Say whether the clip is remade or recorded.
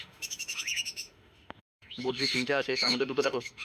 remade